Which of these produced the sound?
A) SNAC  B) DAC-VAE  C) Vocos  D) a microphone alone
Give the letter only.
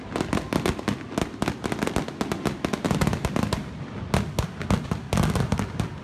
D